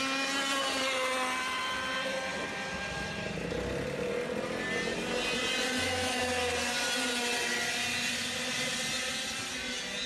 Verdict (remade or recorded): recorded